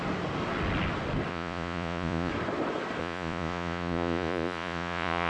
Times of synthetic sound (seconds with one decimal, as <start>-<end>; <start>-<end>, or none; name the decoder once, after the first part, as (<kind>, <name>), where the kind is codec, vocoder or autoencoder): 1.3-2.3 (vocoder, Vocos); 3.0-5.3

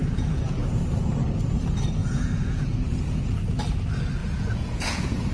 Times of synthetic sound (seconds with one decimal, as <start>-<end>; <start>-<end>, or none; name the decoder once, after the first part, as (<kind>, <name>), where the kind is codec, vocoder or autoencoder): 0.0-0.8 (vocoder, Vocos); 2.0-2.6; 4.2-5.3